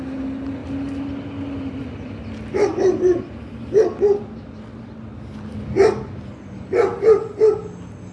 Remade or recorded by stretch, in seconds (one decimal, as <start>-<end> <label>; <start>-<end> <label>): 0.0-8.1 recorded